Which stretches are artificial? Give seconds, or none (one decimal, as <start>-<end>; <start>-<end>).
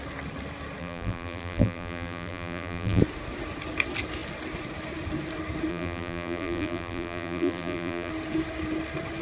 0.8-3.0; 5.7-8.1